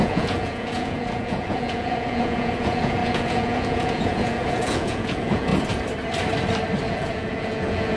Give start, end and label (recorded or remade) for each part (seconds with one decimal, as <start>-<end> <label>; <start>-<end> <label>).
0.0-5.5 remade; 5.5-6.9 recorded; 6.9-8.0 remade